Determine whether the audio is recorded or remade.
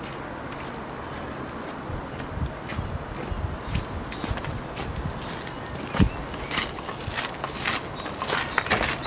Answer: recorded